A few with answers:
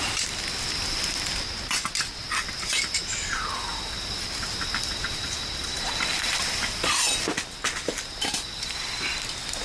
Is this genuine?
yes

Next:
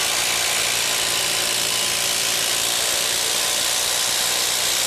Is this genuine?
yes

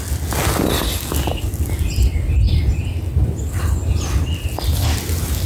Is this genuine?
yes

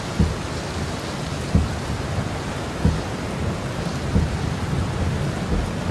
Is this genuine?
yes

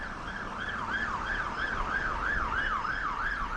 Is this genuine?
yes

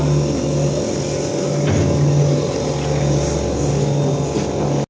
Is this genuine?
yes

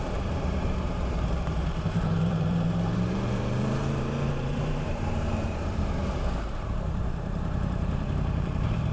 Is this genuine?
no